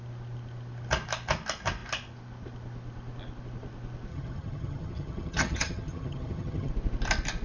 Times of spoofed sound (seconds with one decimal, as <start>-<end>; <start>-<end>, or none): 4.1-6.7